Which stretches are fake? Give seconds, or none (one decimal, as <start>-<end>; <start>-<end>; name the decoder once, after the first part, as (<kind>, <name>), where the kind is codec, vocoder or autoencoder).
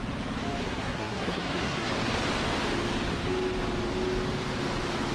0.6-1.9 (codec, SNAC)